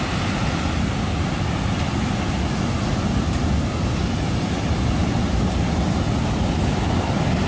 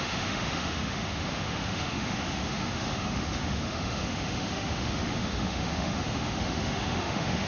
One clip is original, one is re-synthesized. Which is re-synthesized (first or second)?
second